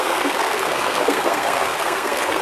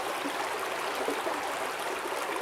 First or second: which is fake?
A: first